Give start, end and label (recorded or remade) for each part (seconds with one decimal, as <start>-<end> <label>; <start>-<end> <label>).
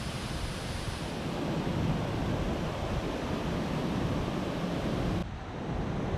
0.0-2.2 remade; 2.2-2.9 recorded; 2.9-6.2 remade